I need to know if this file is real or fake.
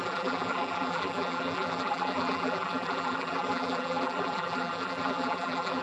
fake